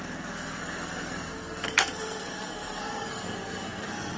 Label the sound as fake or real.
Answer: fake